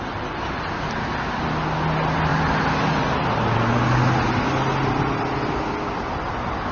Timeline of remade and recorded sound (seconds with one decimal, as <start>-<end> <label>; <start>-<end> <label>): 0.0-6.7 recorded